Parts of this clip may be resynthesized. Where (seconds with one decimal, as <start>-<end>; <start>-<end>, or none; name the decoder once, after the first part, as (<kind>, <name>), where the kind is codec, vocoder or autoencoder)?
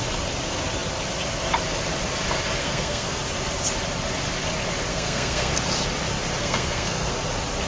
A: 2.6-3.2 (codec, SNAC); 4.9-5.5; 6.4-7.1